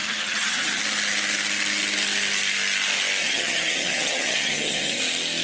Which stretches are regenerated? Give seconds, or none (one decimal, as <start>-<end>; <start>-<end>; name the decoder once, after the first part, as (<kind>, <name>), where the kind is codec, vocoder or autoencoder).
0.0-0.8 (vocoder, HiFi-GAN); 3.2-5.0